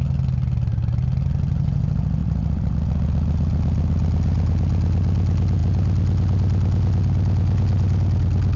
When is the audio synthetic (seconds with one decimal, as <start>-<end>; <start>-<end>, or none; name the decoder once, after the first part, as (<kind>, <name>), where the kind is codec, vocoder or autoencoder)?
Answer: 2.2-2.7 (vocoder, BigVGAN v2)